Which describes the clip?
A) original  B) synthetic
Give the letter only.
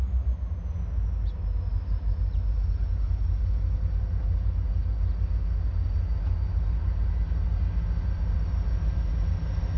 A